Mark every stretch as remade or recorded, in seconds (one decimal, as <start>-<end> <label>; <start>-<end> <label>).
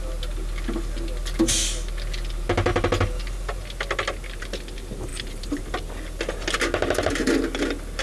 0.0-5.1 recorded; 5.1-5.6 remade; 5.6-8.0 recorded